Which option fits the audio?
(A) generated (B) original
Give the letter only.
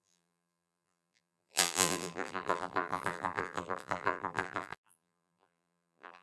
A